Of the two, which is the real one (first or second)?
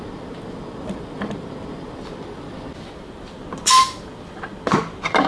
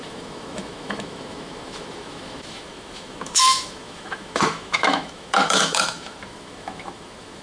first